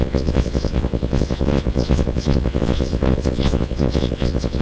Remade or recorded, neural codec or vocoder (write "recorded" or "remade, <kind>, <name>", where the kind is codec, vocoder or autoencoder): remade, vocoder, Vocos